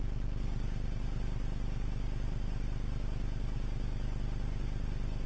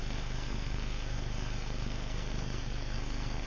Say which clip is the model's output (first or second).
second